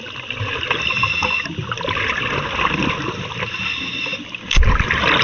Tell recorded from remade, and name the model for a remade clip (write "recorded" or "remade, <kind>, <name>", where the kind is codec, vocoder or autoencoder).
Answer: recorded